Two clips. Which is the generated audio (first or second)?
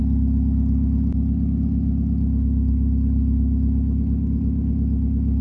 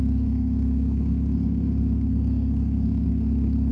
second